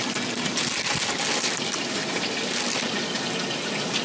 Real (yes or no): yes